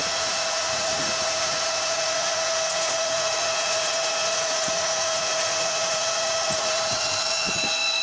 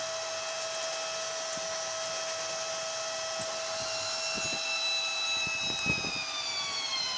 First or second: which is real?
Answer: second